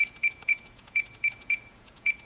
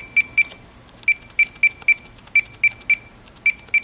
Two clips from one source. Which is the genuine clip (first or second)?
second